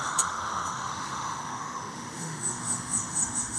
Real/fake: fake